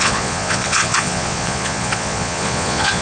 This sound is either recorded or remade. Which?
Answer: remade